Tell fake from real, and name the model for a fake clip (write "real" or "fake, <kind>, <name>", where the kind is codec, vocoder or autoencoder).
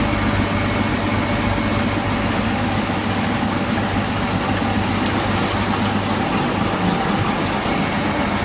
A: real